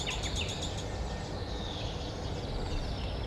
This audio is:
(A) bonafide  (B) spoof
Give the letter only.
A